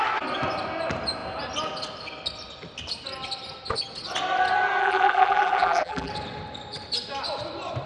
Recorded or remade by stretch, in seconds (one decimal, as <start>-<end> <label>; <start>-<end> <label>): 0.0-4.8 recorded; 4.8-6.1 remade; 6.1-7.9 recorded